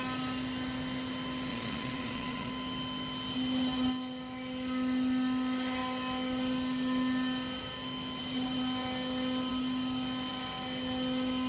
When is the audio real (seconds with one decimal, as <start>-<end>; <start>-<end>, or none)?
0.0-1.5; 2.5-11.5